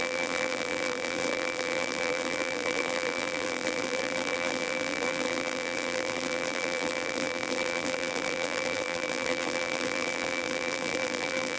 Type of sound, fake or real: fake